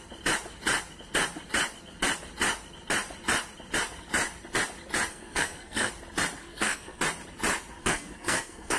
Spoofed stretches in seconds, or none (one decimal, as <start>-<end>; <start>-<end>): 5.1-5.9; 6.4-7.0; 7.8-8.8